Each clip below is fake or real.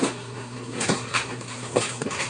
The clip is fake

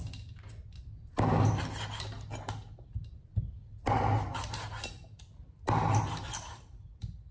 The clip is real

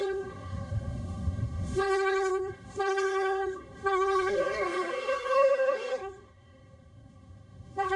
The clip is fake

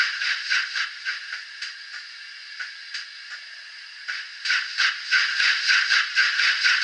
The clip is real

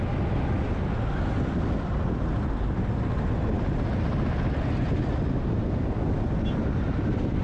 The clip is real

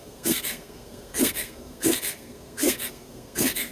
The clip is fake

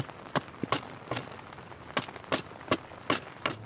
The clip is real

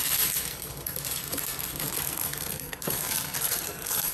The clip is fake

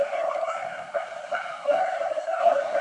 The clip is fake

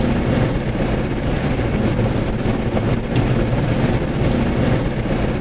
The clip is real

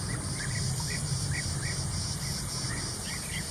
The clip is real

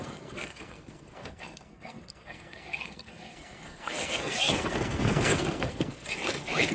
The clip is fake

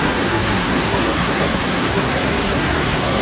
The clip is fake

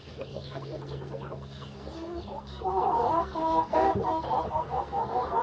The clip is fake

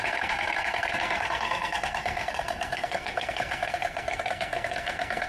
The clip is fake